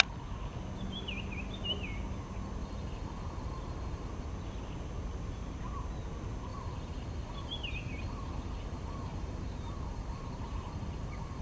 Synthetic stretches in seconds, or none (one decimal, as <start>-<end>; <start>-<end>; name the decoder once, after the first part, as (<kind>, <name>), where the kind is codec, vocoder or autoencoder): 2.6-4.1 (vocoder, BigVGAN v2); 6.5-11.4